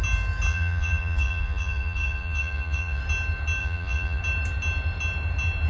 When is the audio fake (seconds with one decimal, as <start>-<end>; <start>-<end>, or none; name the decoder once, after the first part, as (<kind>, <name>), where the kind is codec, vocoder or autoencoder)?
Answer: 0.5-3.0 (vocoder, Vocos); 3.6-4.2